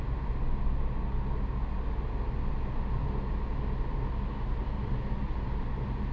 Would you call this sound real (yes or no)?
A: yes